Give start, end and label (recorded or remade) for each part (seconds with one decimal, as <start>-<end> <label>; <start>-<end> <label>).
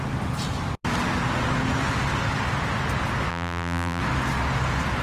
0.0-3.3 recorded; 3.3-4.0 remade; 4.0-5.0 recorded